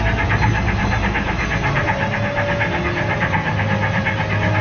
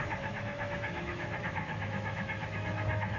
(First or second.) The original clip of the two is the first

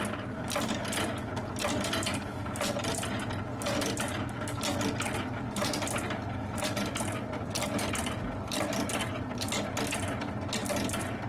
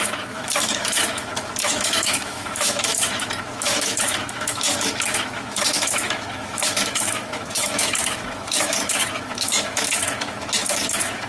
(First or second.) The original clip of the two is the first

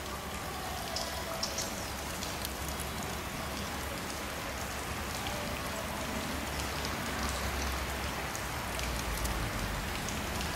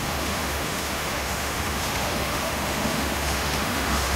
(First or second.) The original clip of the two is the first